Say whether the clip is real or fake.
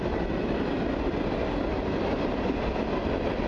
real